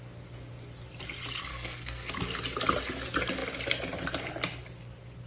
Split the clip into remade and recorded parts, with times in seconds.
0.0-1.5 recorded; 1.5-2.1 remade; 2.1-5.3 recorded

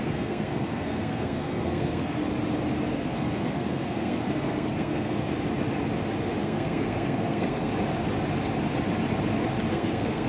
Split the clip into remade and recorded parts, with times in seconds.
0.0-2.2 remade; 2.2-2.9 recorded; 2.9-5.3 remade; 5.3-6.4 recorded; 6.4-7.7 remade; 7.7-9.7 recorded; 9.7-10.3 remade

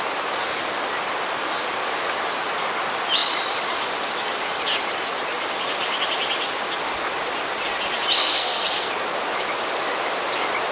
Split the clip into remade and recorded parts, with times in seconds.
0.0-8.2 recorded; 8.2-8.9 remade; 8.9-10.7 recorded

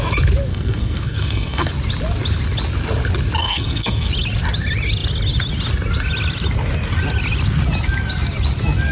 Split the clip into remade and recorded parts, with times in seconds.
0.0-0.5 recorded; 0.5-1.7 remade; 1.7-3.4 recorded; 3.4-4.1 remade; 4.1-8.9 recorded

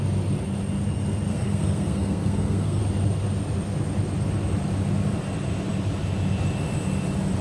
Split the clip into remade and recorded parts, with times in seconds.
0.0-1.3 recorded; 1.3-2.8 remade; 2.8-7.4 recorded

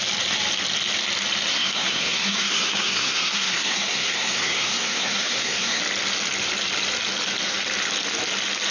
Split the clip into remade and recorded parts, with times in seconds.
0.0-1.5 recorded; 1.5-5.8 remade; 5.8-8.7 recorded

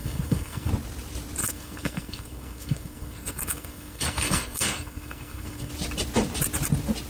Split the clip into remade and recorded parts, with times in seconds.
0.0-0.7 remade; 0.7-1.4 recorded; 1.4-5.7 remade; 5.7-7.1 recorded

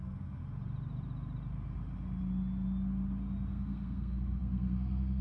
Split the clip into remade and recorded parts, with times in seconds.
0.0-0.4 remade; 0.4-3.5 recorded; 3.5-5.2 remade